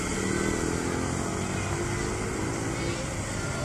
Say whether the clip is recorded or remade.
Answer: recorded